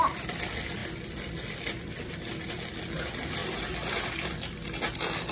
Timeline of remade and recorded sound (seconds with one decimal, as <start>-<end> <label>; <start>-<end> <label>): 0.0-5.3 recorded